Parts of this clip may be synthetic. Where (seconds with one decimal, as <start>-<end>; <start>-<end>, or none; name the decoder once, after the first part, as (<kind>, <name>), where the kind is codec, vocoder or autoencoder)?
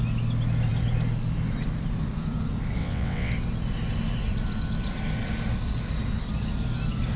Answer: 2.8-3.3 (vocoder, WaveNeXt)